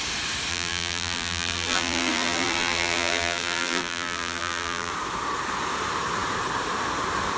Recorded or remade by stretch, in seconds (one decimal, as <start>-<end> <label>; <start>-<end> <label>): 0.0-0.5 recorded; 0.5-4.9 remade; 4.9-7.4 recorded